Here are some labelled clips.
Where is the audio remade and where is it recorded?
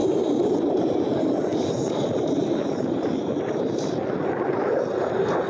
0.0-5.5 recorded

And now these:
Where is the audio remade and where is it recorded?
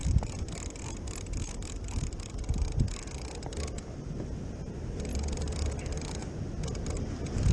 0.0-7.5 recorded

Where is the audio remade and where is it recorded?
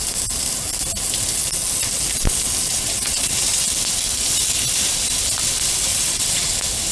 0.0-2.7 recorded; 2.7-3.7 remade; 3.7-5.9 recorded; 5.9-6.5 remade; 6.5-6.9 recorded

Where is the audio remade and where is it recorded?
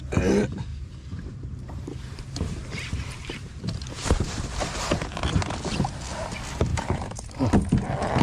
0.0-0.7 recorded; 0.7-5.2 remade; 5.2-6.7 recorded; 6.7-7.4 remade; 7.4-8.2 recorded